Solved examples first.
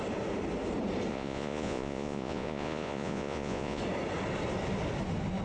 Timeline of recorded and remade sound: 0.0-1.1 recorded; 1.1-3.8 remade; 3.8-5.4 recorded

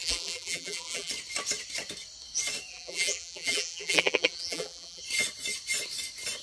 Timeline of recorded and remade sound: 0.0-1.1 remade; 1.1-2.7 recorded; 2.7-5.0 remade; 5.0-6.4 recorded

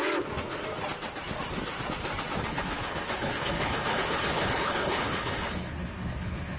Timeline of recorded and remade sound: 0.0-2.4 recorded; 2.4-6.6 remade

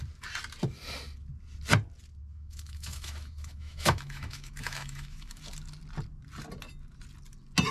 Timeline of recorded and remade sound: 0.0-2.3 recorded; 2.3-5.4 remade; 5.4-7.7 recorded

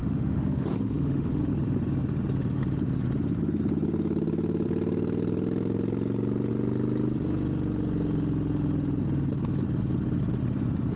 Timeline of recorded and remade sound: 0.0-1.4 remade; 1.4-11.0 recorded

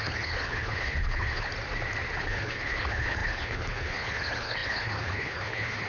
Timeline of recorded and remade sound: 0.0-1.5 remade; 1.5-2.2 recorded; 2.2-5.9 remade

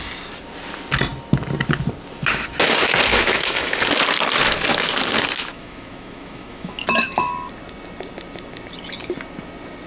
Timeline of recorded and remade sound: 0.0-3.1 recorded; 3.1-3.9 remade; 3.9-5.5 recorded; 5.5-7.3 remade; 7.3-9.9 recorded